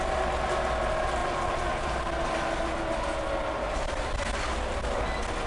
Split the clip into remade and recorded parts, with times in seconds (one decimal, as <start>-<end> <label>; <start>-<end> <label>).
0.0-5.5 recorded